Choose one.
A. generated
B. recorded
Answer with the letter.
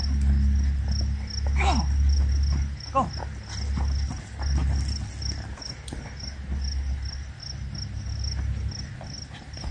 B